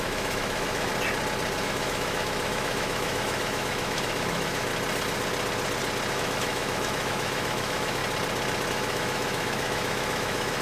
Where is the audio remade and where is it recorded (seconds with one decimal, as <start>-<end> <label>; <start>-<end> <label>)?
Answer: 0.0-0.9 remade; 0.9-1.6 recorded; 1.6-4.7 remade; 4.7-6.1 recorded; 6.1-8.0 remade; 8.0-8.7 recorded; 8.7-10.6 remade